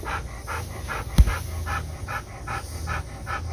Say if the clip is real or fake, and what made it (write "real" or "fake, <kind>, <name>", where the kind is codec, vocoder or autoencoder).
real